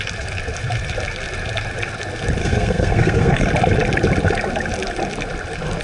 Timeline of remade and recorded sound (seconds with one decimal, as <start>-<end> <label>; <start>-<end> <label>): 0.0-2.4 recorded; 2.4-3.5 remade; 3.5-5.8 recorded